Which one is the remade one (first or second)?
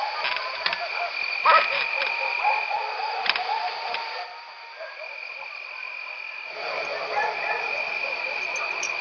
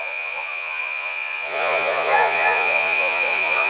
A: second